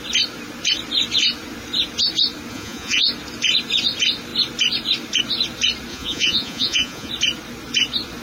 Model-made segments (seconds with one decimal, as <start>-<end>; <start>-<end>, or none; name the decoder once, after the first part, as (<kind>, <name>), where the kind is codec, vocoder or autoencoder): 2.5-3.0 (vocoder, Vocos); 5.9-7.1